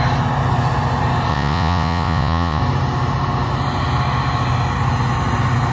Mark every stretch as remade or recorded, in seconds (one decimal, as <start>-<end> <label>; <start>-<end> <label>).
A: 0.0-1.3 recorded; 1.3-2.6 remade; 2.6-5.7 recorded